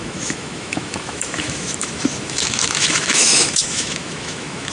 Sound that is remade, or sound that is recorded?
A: remade